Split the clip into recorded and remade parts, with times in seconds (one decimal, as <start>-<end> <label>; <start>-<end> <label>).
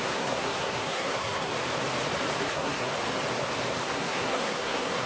0.0-1.5 remade; 1.5-2.4 recorded; 2.4-2.9 remade; 2.9-3.8 recorded; 3.8-5.1 remade